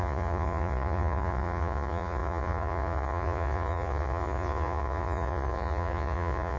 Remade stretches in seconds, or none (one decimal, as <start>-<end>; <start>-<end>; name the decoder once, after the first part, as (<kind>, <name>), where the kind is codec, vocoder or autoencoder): 0.0-6.6 (vocoder, Vocos)